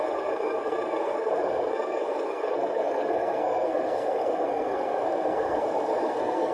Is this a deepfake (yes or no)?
yes